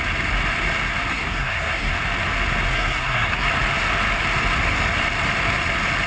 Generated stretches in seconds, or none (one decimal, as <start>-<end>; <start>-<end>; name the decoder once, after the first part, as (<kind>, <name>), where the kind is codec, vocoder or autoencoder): 1.1-1.9 (codec, SNAC); 2.7-3.5